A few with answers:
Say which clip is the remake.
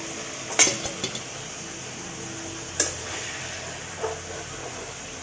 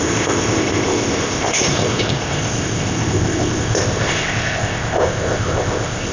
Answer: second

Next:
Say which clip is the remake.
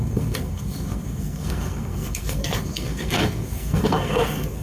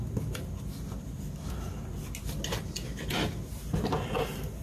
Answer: first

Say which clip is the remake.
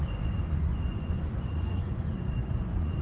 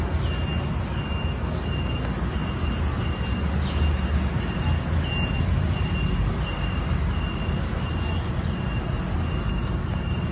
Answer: first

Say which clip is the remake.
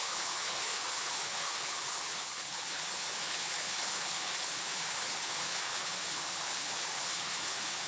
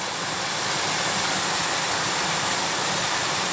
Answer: first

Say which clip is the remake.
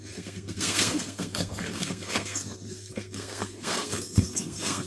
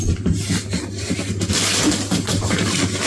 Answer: first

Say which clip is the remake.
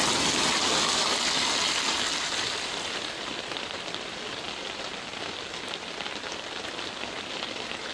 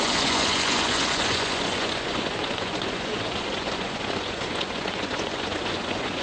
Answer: second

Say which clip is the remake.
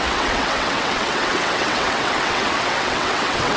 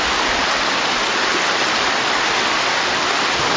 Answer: first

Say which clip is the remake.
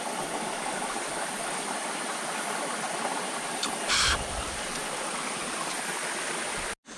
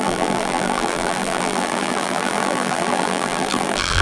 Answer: second